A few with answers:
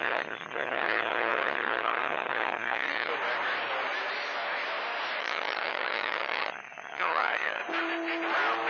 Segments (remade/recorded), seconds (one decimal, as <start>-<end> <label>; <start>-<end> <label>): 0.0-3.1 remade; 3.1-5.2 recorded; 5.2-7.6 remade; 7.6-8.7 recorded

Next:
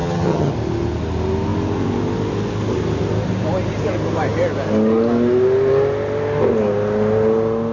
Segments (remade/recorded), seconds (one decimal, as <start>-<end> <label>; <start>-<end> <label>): 0.0-0.5 remade; 0.5-7.7 recorded

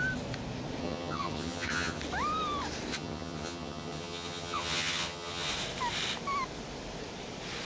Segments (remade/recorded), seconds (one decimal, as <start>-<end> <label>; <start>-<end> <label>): 0.0-0.8 recorded; 0.8-2.0 remade; 2.0-2.9 recorded; 2.9-5.5 remade; 5.5-7.6 recorded